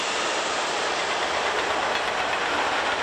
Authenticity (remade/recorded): recorded